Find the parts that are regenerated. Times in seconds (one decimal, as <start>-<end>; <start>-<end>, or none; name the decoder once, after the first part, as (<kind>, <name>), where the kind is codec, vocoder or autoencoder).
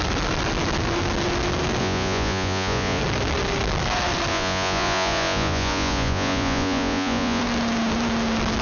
1.8-3.0 (vocoder, Vocos); 4.3-7.4